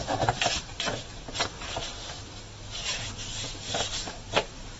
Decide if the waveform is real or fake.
real